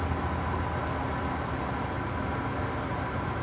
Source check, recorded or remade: recorded